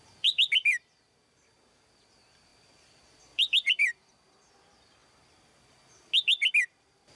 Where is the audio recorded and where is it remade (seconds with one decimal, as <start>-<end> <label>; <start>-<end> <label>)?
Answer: 0.0-0.6 remade; 0.6-2.1 recorded; 2.1-5.0 remade; 5.0-6.6 recorded; 6.6-7.2 remade